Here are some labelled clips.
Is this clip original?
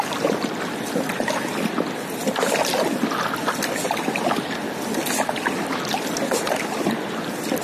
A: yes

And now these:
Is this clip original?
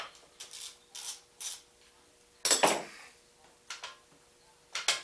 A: yes